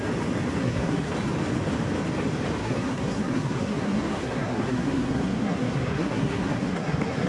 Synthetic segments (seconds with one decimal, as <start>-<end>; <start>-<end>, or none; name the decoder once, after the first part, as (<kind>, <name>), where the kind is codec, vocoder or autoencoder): 0.6-1.1 (codec, SNAC); 2.6-7.3